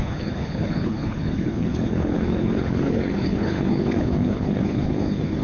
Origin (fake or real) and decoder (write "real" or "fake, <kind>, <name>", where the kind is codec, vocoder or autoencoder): fake, codec, HILCodec